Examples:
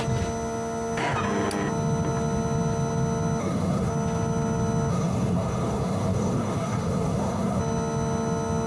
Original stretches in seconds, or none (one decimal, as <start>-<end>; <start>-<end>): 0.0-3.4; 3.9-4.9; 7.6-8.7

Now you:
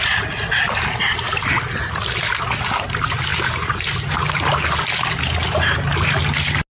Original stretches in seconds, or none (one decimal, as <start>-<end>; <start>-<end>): 0.0-6.8

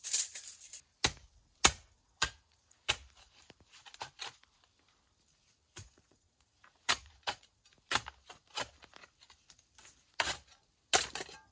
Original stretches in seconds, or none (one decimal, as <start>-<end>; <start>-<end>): 0.0-2.0; 2.9-5.7; 7.6-11.5

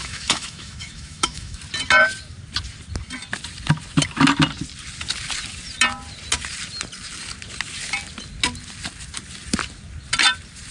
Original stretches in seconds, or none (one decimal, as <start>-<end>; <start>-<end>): 1.6-10.7